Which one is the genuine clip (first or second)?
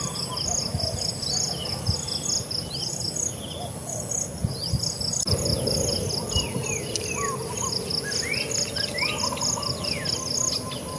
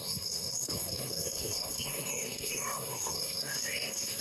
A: first